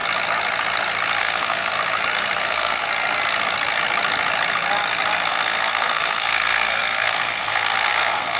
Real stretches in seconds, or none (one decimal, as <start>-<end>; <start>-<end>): 0.0-1.2; 1.7-2.4; 2.8-5.3